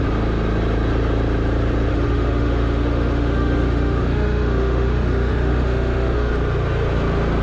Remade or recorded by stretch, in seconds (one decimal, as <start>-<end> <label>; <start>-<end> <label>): 0.0-1.9 recorded; 1.9-6.3 remade; 6.3-7.4 recorded